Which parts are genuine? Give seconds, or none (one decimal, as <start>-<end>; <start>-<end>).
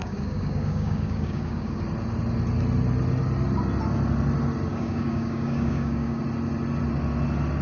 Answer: 1.8-4.7; 6.2-7.6